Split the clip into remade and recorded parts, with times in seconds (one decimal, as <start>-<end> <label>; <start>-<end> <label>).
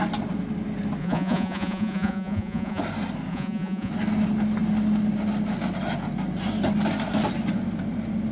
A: 0.0-1.0 recorded; 1.0-2.8 remade; 2.8-3.3 recorded; 3.3-3.9 remade; 3.9-8.3 recorded